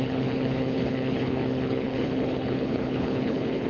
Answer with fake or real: fake